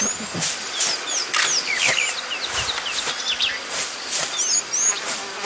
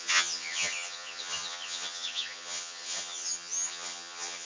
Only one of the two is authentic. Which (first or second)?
first